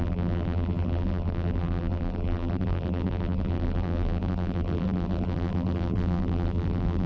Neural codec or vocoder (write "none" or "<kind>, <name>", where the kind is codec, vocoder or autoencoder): vocoder, BigVGAN v2